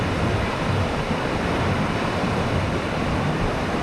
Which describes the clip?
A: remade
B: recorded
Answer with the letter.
A